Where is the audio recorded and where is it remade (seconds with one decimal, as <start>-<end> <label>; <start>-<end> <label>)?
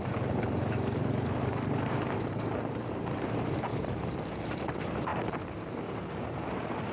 0.0-3.7 remade; 3.7-4.3 recorded; 4.3-6.9 remade